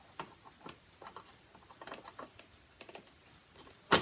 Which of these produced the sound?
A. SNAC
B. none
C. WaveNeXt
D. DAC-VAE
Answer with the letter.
B